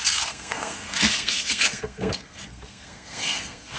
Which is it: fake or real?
fake